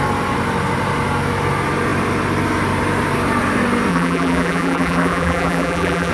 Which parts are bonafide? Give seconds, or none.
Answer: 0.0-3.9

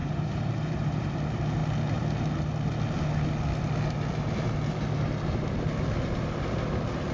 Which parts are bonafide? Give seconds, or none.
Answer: 1.1-7.1

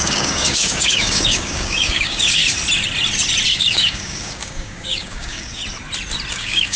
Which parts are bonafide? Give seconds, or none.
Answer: 2.4-3.5; 5.6-6.3

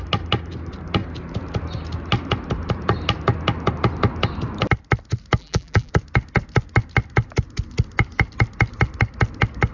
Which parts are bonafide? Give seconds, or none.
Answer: 0.0-5.4; 5.9-9.7

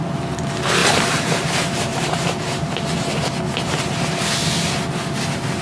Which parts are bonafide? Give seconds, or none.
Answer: 0.0-0.8; 3.2-5.6